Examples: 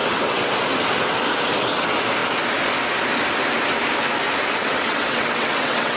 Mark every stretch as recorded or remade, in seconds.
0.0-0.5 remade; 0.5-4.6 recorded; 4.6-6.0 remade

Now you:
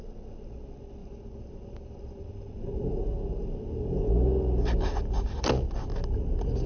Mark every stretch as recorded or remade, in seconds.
0.0-1.0 recorded; 1.0-2.3 remade; 2.3-6.7 recorded

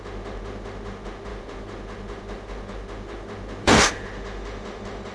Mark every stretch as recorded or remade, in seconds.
0.0-5.1 remade

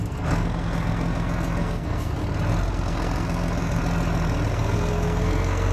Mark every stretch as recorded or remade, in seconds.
0.0-2.2 remade; 2.2-2.7 recorded; 2.7-3.8 remade; 3.8-4.5 recorded; 4.5-5.7 remade

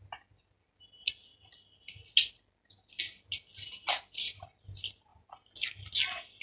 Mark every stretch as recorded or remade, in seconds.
0.0-6.4 recorded

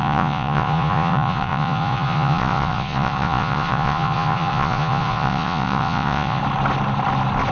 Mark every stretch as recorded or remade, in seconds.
0.0-6.4 remade; 6.4-7.5 recorded

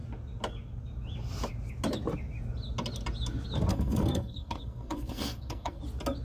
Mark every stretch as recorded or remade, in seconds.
0.0-3.7 recorded; 3.7-5.8 remade; 5.8-6.2 recorded